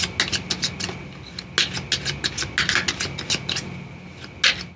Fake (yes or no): no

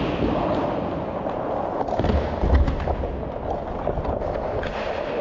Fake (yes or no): no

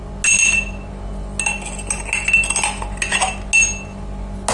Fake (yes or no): no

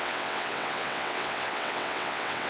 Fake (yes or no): yes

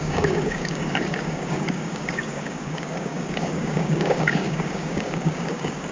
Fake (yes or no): yes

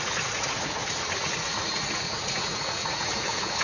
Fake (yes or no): yes